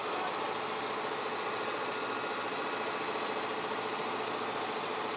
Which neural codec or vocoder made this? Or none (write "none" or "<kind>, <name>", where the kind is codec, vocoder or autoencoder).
none